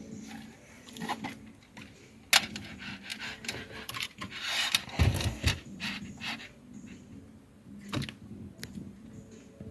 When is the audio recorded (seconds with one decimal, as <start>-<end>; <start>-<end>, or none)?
0.0-3.1; 6.4-9.7

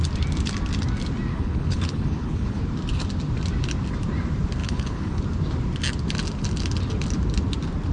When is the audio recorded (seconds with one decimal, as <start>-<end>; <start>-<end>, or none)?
0.0-1.3; 2.6-4.6; 5.2-7.9

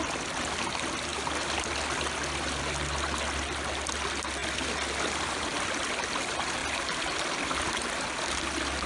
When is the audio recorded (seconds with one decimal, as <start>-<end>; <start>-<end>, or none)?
0.0-8.9

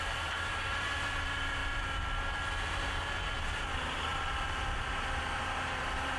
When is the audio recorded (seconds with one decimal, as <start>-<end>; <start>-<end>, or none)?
1.6-3.3

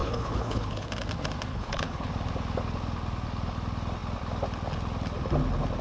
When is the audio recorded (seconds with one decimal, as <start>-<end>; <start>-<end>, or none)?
0.9-1.5; 2.1-5.8